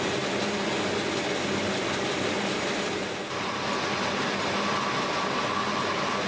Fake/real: real